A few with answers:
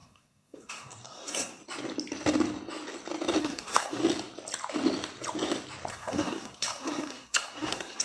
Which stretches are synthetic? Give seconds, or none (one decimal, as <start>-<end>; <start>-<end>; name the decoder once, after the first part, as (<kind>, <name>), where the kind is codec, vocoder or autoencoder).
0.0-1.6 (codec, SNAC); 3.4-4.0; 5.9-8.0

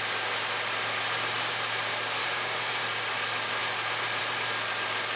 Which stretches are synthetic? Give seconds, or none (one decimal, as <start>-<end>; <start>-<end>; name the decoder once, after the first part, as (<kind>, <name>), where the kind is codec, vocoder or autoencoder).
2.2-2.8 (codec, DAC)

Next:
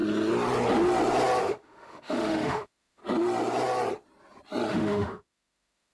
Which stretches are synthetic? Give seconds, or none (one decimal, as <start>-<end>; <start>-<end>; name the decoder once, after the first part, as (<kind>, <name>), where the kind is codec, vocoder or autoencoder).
1.4-3.0 (autoencoder, DAC-VAE); 4.7-5.9